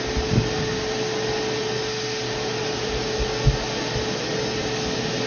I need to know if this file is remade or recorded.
recorded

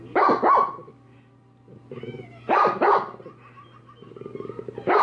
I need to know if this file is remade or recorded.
recorded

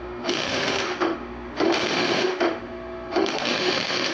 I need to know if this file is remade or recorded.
remade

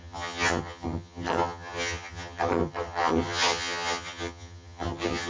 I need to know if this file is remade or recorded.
remade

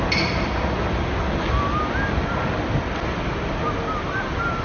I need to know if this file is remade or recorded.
recorded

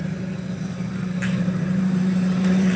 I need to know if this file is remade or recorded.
remade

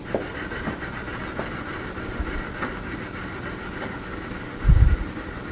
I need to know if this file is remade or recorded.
recorded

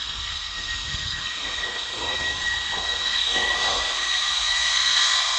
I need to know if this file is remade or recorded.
remade